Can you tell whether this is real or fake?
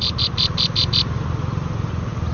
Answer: real